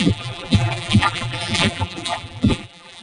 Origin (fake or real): fake